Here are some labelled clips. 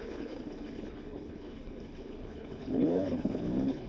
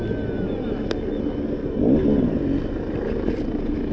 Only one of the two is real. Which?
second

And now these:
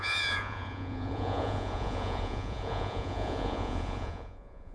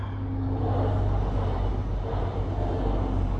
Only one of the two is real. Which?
second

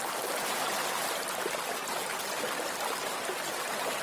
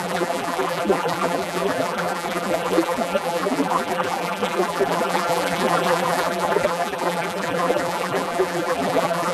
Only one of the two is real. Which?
first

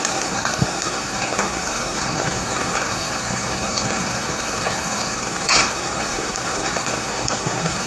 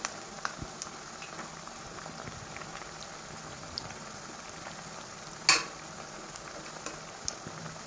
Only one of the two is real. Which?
second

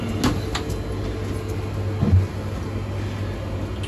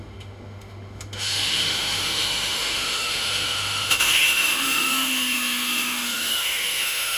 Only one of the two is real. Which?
first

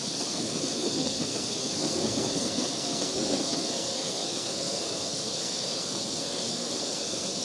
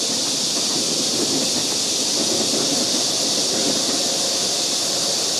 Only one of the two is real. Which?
second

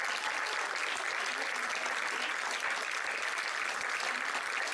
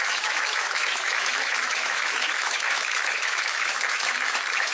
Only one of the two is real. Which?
first